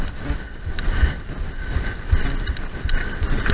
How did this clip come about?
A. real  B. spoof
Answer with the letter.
A